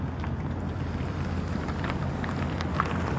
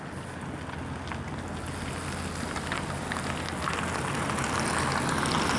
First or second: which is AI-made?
first